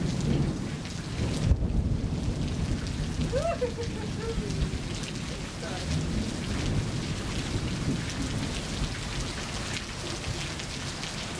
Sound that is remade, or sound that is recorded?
recorded